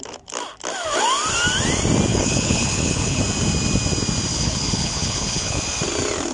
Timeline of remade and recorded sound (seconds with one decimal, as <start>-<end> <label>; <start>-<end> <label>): 0.0-2.1 recorded; 2.1-3.2 remade; 3.2-4.3 recorded; 4.3-5.6 remade; 5.6-6.3 recorded